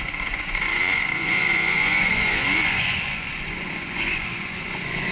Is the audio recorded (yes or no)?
no